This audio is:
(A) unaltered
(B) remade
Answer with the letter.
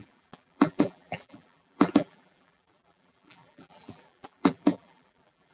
B